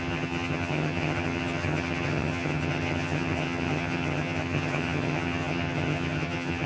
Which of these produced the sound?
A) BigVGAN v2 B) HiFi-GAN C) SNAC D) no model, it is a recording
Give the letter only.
B